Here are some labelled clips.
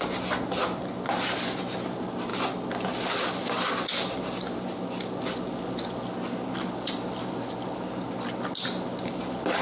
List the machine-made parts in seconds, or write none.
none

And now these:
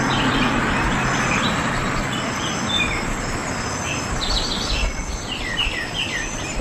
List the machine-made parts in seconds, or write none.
none

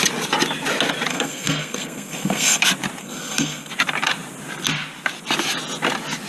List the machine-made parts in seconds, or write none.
1.1-2.6 (codec, SNAC); 3.0-3.7

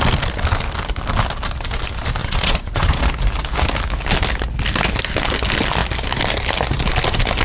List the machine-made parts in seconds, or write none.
2.2-3.0 (vocoder, Vocos)

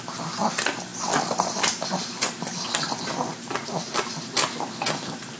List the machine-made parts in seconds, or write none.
none

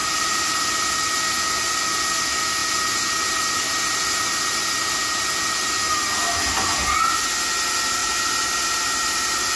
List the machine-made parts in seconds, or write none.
0.0-1.0 (vocoder, BigVGAN v2); 8.0-9.6

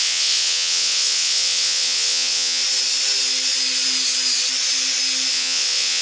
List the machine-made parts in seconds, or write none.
0.0-2.6 (vocoder, WaveNeXt); 5.3-6.0

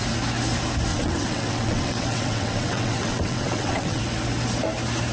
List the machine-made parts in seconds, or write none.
0.9-4.0 (vocoder, WaveNeXt)